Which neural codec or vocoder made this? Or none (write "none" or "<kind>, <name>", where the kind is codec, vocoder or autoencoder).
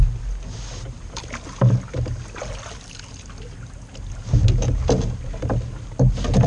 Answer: none